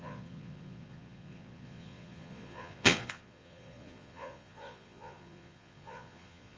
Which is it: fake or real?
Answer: fake